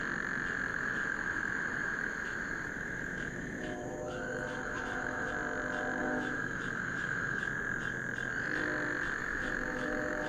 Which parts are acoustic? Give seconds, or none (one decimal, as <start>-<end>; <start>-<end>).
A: 0.0-0.7; 5.3-6.0; 7.5-9.2